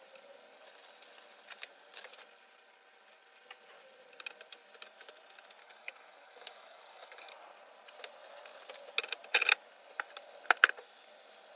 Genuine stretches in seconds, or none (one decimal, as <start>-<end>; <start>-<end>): 0.0-5.6; 7.3-11.6